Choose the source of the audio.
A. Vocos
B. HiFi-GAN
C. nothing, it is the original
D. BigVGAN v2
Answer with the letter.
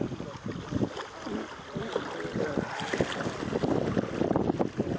C